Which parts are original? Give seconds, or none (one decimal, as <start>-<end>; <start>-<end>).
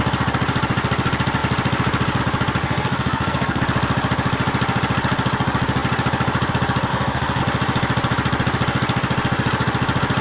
0.0-2.6; 3.6-6.9; 7.4-10.2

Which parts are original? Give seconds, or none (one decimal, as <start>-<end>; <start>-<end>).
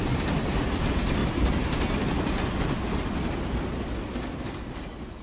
0.0-5.2